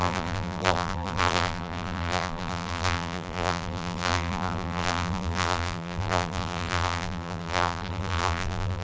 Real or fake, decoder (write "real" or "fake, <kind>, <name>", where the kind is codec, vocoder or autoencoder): fake, vocoder, BigVGAN v2